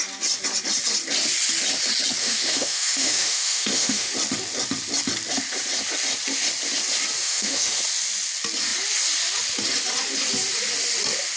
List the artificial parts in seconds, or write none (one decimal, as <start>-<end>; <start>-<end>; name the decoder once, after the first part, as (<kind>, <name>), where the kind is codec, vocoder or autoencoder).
2.2-4.1 (autoencoder, DAC-VAE); 7.2-7.8